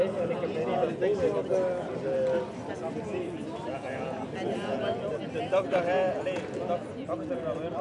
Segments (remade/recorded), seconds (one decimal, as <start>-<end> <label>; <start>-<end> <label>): 0.0-7.8 recorded